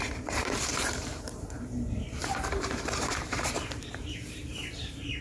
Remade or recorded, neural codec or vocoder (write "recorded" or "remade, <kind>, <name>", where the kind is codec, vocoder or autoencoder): remade, vocoder, BigVGAN v2